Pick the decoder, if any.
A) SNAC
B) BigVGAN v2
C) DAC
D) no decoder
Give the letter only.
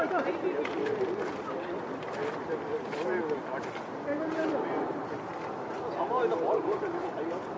B